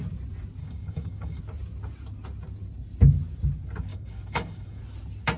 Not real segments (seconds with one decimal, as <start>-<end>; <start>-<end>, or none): 0.6-1.4; 3.9-4.8